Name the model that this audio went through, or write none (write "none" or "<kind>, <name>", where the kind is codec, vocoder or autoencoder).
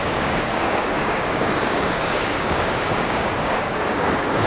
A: codec, DAC